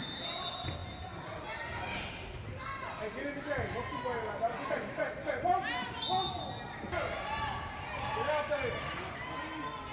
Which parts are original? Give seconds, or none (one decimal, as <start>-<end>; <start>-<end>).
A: 0.0-9.9